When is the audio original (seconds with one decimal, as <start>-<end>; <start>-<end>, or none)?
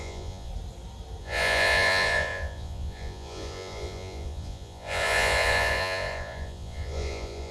0.5-1.2